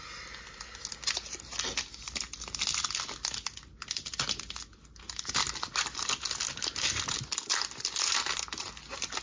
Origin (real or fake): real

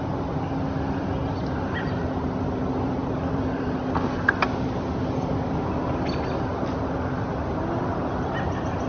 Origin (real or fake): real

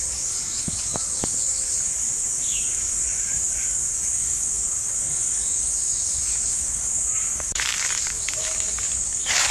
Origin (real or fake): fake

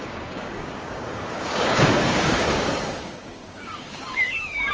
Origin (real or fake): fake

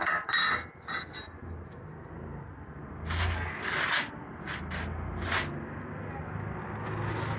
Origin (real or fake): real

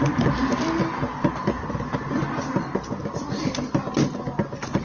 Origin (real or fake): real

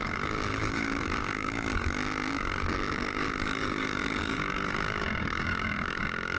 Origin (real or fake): fake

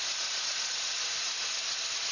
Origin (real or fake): real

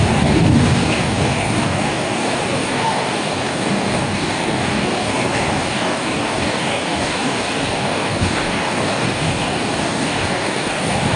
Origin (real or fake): fake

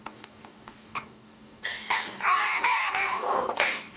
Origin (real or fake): fake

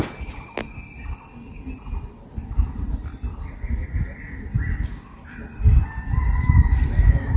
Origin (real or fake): real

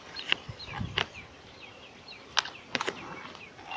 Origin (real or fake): real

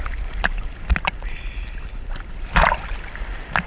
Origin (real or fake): real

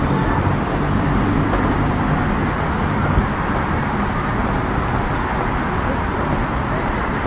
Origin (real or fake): real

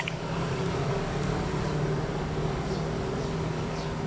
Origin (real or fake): fake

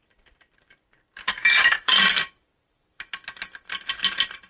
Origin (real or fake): real